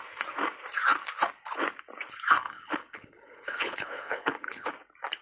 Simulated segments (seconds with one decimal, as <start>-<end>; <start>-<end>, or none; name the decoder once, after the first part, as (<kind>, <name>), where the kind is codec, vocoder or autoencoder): 2.4-4.7 (codec, HILCodec)